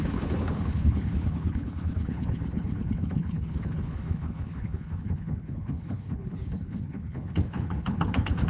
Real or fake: fake